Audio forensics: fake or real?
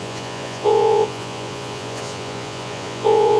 fake